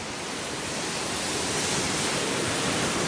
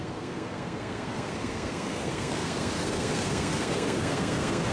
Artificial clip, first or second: second